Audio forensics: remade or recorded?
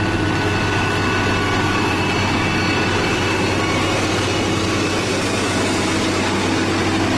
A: recorded